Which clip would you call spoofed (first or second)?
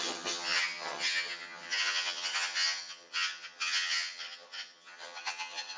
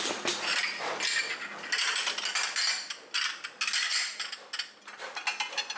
first